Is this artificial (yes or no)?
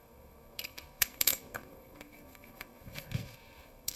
yes